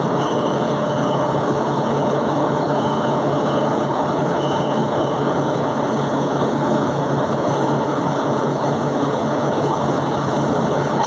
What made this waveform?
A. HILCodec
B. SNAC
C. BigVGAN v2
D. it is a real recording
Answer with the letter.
A